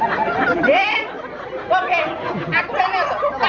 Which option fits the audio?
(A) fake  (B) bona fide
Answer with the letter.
B